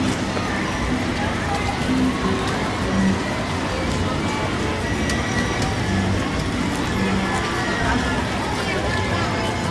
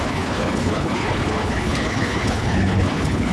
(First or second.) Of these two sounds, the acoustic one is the first